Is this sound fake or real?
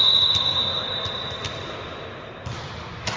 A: real